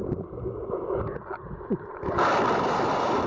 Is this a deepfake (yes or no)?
no